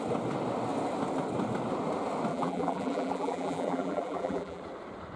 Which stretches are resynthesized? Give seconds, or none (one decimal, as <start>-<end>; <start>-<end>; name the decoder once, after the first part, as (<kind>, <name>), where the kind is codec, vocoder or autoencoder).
2.3-4.6 (vocoder, BigVGAN v2)